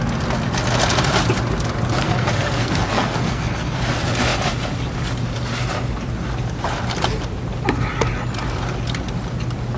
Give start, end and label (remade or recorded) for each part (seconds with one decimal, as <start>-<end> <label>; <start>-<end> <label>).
0.0-2.0 recorded; 2.0-3.8 remade; 3.8-9.8 recorded